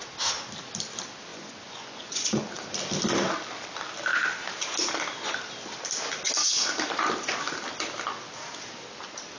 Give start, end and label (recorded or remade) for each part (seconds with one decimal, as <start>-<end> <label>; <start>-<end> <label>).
0.0-1.3 recorded; 1.3-2.4 remade; 2.4-9.4 recorded